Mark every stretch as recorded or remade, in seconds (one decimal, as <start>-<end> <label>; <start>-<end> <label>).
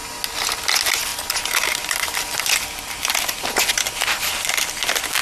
0.0-5.2 recorded